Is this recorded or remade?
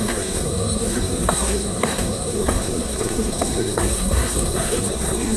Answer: remade